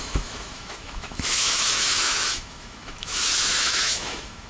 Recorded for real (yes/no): no